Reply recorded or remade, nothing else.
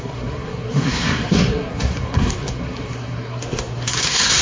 remade